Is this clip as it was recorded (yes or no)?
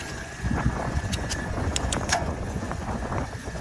no